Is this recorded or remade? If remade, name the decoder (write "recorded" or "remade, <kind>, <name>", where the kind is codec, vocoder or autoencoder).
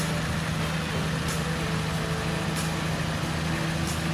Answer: recorded